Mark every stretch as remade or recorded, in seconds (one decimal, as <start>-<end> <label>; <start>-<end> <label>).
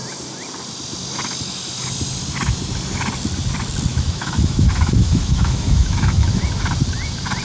0.0-3.9 recorded; 3.9-6.4 remade; 6.4-7.4 recorded